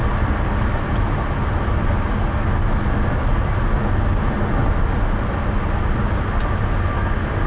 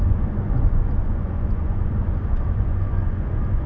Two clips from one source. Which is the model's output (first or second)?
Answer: second